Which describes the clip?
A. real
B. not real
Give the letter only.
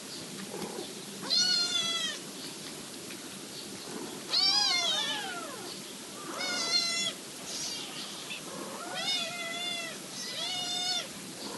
A